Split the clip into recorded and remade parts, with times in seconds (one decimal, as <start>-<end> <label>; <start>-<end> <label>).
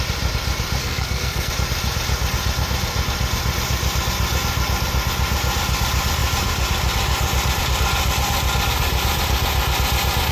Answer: 0.0-0.8 recorded; 0.8-1.5 remade; 1.5-10.3 recorded